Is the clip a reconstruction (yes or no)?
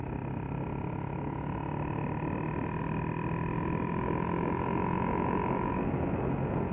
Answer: no